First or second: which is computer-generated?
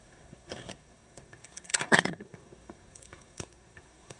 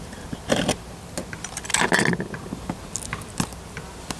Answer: first